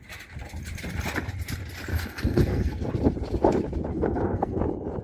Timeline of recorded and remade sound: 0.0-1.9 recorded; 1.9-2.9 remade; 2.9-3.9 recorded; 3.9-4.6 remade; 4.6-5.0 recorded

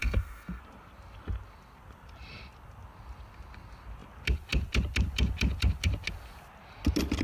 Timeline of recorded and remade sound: 0.0-0.6 remade; 0.6-7.2 recorded

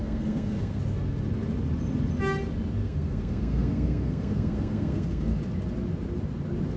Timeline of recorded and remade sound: 0.0-0.8 remade; 0.8-2.8 recorded; 2.8-5.4 remade; 5.4-6.8 recorded

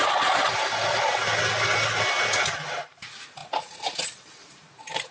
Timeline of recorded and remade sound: 0.0-5.1 recorded

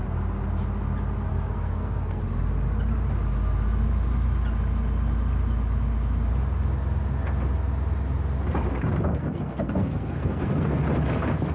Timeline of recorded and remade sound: 0.0-1.3 recorded; 1.3-2.2 remade; 2.2-9.1 recorded; 9.1-10.8 remade; 10.8-11.5 recorded

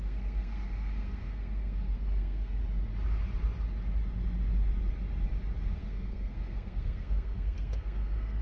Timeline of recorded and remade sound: 0.0-2.6 remade; 2.6-5.7 recorded; 5.7-8.4 remade

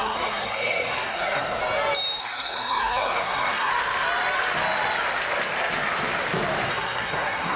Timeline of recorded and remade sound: 0.0-1.6 remade; 1.6-2.2 recorded; 2.2-3.7 remade; 3.7-6.7 recorded; 6.7-7.6 remade